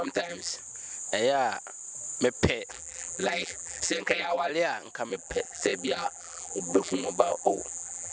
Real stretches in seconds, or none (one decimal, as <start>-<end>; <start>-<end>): 0.5-2.7; 4.5-5.1

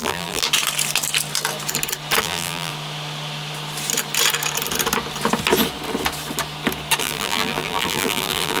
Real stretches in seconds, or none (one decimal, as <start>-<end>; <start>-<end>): 0.4-2.2; 2.7-7.0